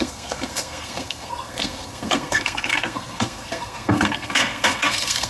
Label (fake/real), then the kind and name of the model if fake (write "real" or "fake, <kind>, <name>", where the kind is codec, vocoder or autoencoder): fake, codec, SNAC